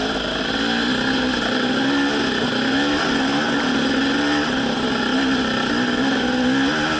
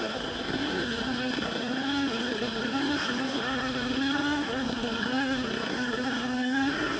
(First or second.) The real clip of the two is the first